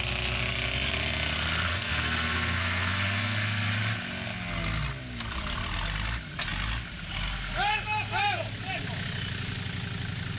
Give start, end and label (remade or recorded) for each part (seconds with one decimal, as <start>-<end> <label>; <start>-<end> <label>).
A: 0.0-1.7 recorded; 1.7-3.7 remade; 3.7-10.4 recorded